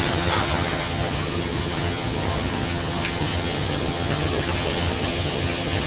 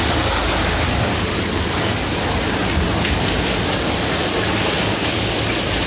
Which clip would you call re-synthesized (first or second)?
first